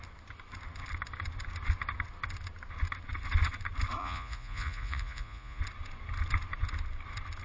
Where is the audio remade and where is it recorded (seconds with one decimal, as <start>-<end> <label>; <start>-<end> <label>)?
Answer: 0.0-4.0 recorded; 4.0-5.6 remade; 5.6-7.4 recorded